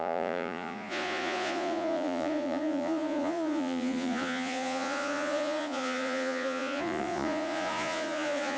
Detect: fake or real fake